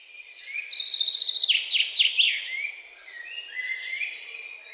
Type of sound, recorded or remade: remade